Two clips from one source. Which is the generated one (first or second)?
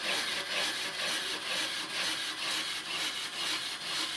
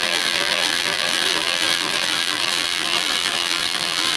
second